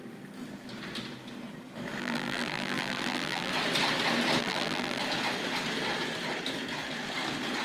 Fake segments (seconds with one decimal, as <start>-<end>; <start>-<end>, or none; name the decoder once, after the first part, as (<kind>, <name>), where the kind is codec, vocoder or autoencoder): 2.0-3.5 (vocoder, BigVGAN v2); 4.4-5.0